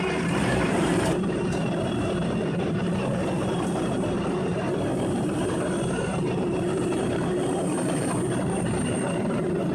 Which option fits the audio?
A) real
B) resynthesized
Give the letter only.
B